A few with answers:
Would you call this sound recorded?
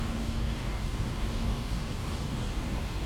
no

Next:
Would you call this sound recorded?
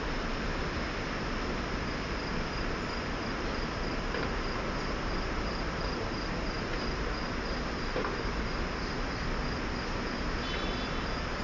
yes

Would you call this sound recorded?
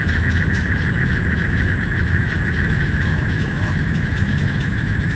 no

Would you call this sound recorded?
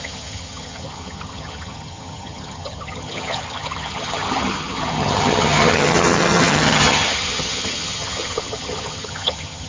no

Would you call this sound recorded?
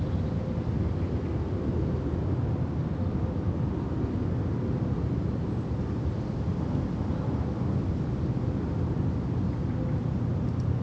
yes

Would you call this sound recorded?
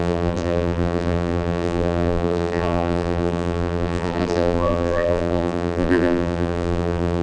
no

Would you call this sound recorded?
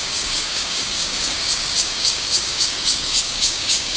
no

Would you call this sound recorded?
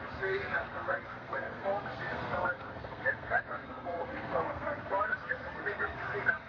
no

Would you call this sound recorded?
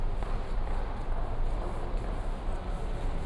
yes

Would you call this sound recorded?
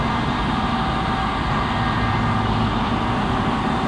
yes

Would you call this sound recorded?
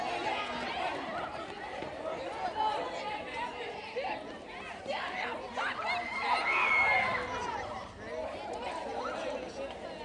yes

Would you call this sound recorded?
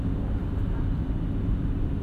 no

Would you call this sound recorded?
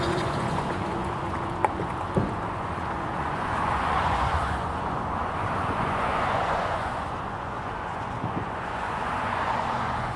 no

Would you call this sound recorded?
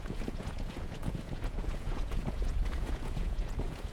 no